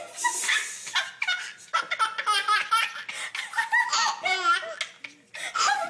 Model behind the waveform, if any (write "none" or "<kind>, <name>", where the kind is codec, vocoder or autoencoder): none